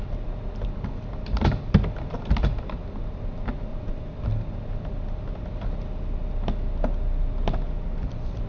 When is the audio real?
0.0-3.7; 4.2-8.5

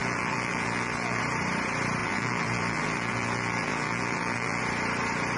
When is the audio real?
1.2-2.0; 4.6-5.4